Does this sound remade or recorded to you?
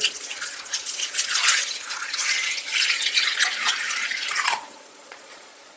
remade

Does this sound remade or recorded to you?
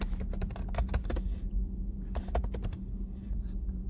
recorded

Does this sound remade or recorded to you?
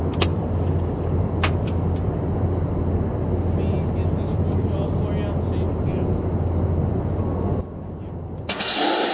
recorded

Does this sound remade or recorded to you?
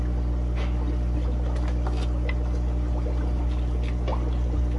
recorded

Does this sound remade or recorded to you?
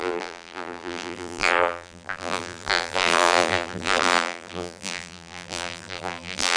remade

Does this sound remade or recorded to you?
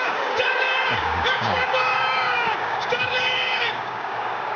remade